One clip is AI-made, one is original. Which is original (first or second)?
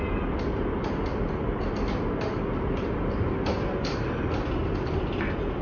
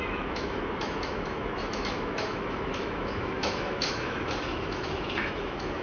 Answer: first